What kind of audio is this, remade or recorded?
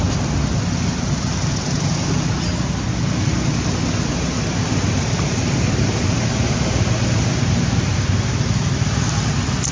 recorded